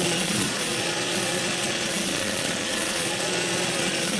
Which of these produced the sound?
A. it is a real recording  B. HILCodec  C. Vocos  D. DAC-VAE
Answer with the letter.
C